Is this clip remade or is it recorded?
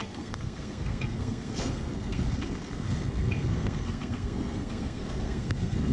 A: remade